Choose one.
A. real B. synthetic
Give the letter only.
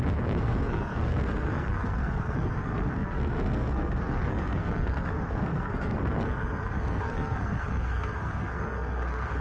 B